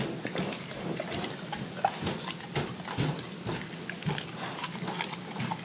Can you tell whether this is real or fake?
real